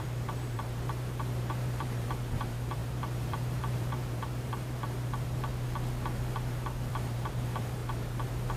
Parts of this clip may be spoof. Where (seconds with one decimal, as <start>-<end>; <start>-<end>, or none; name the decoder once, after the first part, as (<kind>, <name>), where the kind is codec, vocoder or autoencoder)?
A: 0.0-5.5 (vocoder, BigVGAN v2); 6.9-8.6